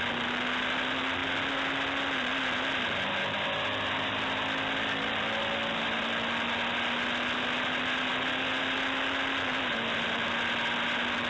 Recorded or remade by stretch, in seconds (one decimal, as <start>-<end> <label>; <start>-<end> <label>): 0.0-11.3 recorded